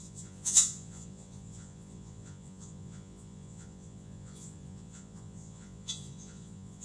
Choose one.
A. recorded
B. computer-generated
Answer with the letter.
B